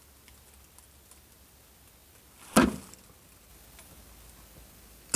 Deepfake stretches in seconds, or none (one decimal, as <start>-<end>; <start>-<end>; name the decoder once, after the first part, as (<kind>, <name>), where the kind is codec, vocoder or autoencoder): none

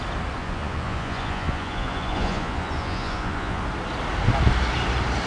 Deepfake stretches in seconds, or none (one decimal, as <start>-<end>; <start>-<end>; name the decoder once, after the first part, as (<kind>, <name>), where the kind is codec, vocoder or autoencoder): 0.4-3.6 (vocoder, Vocos)

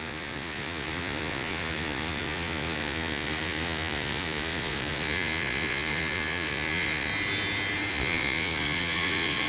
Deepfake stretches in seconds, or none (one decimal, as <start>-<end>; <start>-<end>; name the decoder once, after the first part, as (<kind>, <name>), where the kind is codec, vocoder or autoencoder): 0.0-7.1 (vocoder, Vocos); 7.9-9.5

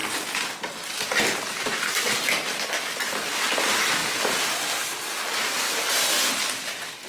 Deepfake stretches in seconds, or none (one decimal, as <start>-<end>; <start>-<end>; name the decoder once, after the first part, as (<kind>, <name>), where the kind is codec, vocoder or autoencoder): none